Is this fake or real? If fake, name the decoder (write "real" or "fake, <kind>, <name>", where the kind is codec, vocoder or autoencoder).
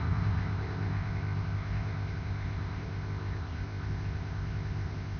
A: fake, codec, ZipCodec